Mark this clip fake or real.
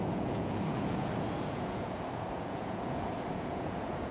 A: fake